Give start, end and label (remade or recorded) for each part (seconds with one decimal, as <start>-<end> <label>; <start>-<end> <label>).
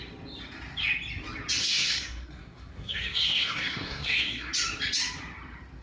0.0-1.6 recorded; 1.6-4.5 remade; 4.5-5.8 recorded